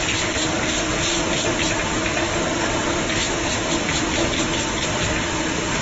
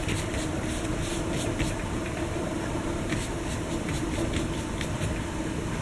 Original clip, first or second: first